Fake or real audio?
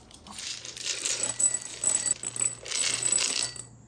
real